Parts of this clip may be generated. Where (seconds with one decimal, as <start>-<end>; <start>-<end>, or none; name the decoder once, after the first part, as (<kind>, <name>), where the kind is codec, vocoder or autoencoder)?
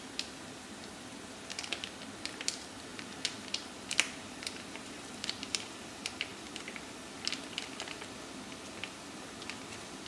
2.9-5.8 (vocoder, BigVGAN v2)